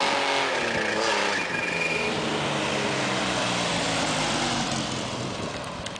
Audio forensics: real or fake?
real